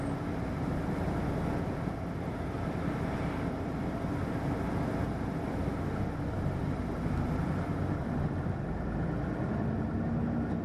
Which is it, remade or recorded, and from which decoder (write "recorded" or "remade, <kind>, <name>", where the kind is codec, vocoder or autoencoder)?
recorded